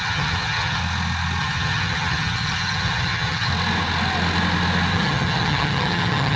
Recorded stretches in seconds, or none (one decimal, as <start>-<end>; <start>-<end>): 0.8-1.4; 3.5-4.9